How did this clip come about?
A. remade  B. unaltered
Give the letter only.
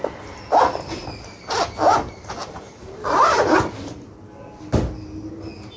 B